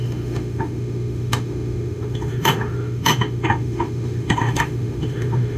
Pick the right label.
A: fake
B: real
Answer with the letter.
A